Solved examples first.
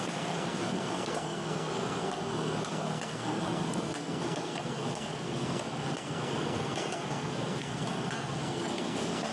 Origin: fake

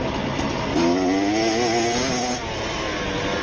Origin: real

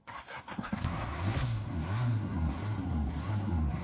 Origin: fake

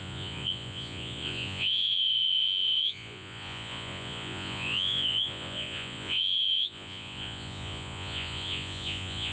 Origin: fake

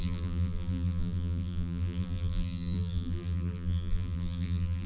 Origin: fake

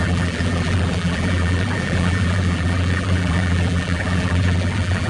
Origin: fake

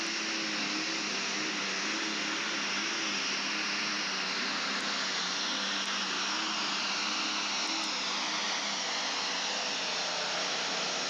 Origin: real